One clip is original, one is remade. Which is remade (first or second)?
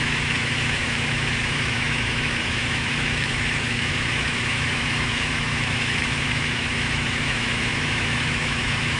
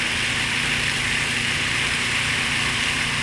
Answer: first